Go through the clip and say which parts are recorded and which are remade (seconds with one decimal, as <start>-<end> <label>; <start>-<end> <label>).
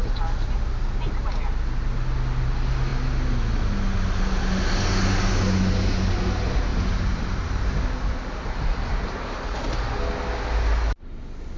0.0-6.7 recorded; 6.7-9.3 remade; 9.3-11.6 recorded